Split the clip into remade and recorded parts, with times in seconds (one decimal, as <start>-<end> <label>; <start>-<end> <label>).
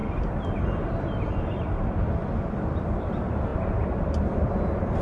0.0-5.0 recorded